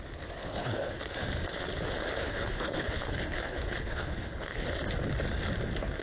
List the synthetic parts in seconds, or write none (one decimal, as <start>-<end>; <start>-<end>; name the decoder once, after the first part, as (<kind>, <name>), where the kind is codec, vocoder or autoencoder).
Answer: 0.4-1.0 (codec, HILCodec); 2.2-4.7